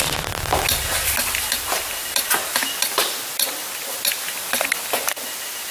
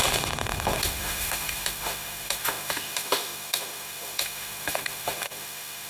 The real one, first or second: first